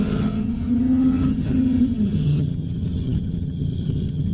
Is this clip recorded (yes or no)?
no